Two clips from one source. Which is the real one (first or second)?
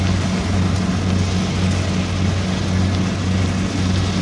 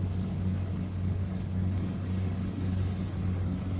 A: first